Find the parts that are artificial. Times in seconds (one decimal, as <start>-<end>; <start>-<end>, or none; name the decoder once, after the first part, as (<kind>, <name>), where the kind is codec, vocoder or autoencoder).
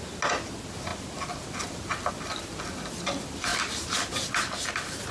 none